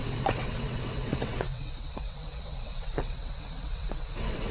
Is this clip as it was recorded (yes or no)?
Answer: no